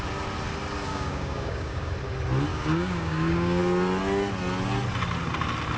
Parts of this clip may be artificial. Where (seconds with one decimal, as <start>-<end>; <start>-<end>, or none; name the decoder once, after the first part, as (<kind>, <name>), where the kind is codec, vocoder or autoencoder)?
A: 0.9-1.9 (codec, DAC); 2.5-3.6